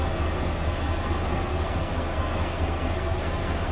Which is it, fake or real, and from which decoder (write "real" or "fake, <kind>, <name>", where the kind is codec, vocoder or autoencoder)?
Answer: fake, codec, SNAC